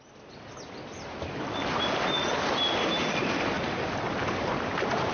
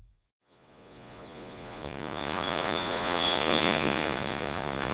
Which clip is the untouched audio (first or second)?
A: first